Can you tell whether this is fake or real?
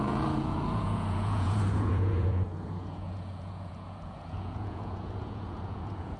fake